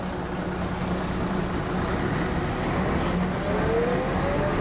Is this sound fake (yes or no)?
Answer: no